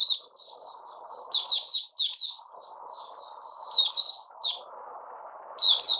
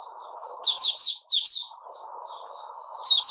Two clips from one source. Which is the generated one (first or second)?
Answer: second